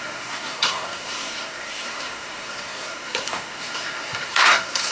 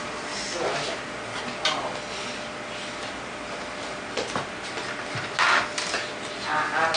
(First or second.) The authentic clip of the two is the second